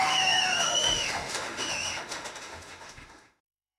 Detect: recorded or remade remade